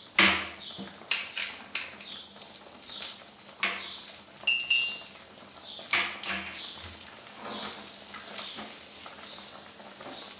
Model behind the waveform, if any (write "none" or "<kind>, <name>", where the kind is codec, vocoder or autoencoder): none